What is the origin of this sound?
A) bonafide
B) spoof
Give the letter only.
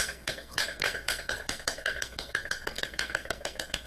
B